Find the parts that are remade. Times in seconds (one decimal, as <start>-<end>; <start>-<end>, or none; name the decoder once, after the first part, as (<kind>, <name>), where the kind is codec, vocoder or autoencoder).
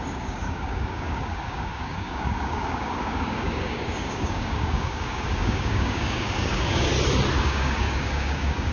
0.0-6.9 (codec, DAC); 7.4-8.7